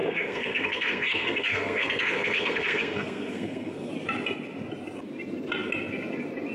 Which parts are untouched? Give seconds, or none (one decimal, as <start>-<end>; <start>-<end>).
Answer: 3.9-6.5